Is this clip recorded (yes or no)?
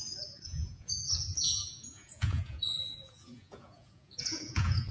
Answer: no